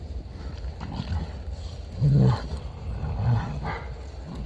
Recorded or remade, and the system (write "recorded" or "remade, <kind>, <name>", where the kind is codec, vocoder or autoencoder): recorded